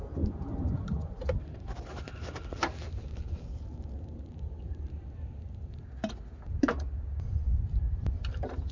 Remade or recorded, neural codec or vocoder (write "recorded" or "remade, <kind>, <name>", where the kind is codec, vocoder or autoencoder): recorded